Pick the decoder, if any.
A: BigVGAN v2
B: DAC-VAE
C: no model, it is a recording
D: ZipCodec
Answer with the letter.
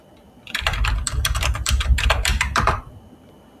A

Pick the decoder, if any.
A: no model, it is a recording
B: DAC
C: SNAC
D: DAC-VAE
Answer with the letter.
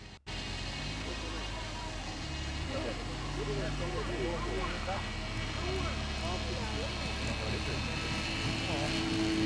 A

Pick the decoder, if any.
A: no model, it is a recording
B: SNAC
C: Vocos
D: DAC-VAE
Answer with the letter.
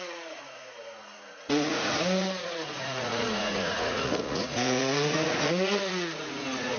C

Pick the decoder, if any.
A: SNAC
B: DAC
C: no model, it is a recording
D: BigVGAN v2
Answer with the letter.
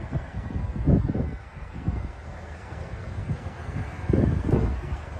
A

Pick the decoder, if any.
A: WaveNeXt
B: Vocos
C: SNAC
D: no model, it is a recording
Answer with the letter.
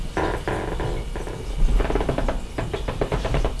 D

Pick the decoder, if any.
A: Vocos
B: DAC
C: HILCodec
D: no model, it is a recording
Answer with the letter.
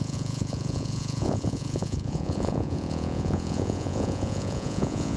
A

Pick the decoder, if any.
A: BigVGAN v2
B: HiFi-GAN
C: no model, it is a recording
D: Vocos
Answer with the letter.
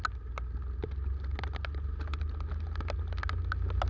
C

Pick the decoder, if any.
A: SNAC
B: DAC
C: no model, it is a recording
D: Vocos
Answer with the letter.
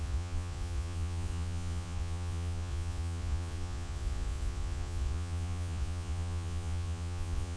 D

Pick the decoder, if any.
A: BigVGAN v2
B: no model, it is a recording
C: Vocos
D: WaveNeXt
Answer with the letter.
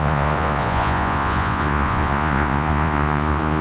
C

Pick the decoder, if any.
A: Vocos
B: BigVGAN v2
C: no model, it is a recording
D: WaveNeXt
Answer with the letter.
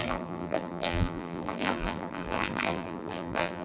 B